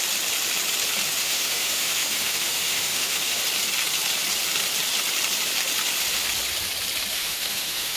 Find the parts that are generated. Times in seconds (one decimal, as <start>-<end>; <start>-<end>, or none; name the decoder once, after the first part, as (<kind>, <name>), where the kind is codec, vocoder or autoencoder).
1.2-3.4 (autoencoder, DAC-VAE); 7.1-8.0